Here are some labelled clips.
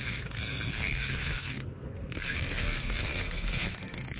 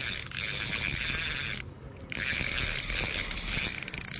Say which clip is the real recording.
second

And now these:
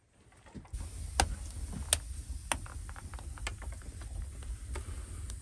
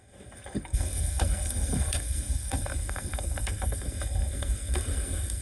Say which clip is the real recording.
first